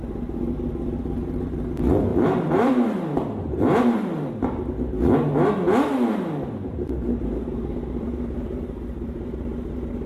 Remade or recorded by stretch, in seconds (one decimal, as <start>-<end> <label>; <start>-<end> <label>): 0.0-2.1 recorded; 2.1-4.3 remade; 4.3-6.7 recorded; 6.7-9.5 remade; 9.5-10.1 recorded